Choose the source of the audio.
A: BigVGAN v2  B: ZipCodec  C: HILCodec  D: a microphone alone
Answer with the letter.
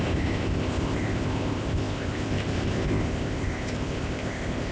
B